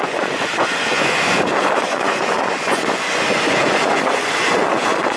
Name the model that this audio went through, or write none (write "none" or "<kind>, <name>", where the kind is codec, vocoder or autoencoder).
vocoder, Vocos